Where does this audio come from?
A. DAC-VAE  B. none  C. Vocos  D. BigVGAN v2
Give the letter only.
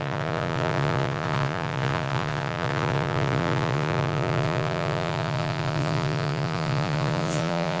C